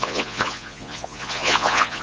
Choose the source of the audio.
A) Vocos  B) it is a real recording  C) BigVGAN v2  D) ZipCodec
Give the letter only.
A